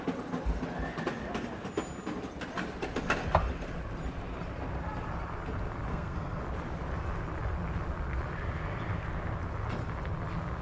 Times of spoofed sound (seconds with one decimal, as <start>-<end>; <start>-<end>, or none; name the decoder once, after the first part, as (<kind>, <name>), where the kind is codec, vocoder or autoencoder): 5.9-6.4 (codec, SNAC)